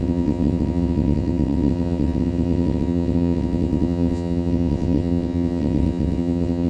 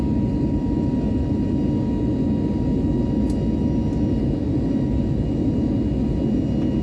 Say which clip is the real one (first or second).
second